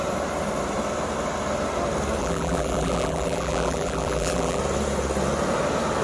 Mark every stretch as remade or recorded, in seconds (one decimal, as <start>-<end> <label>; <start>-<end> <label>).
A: 0.0-2.2 recorded; 2.2-4.6 remade; 4.6-6.0 recorded